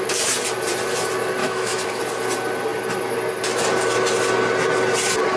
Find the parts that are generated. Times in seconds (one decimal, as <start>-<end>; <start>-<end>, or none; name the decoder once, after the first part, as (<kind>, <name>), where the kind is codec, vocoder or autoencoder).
1.4-2.0 (autoencoder, DAC-VAE)